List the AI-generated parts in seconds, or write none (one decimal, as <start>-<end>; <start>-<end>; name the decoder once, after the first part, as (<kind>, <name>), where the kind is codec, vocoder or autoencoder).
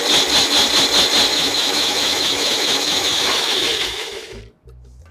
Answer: 1.3-4.4 (autoencoder, DAC-VAE)